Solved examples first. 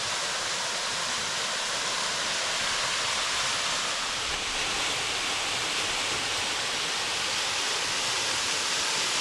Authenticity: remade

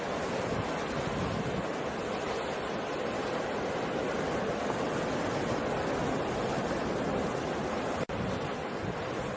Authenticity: recorded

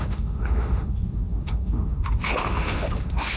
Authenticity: remade